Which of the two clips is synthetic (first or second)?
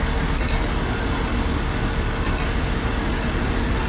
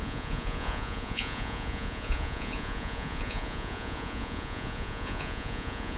second